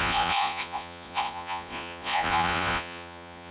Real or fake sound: fake